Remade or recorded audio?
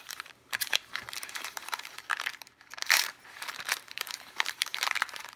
remade